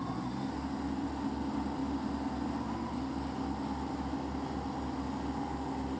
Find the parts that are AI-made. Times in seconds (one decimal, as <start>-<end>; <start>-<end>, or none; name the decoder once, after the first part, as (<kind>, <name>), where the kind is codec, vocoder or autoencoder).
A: none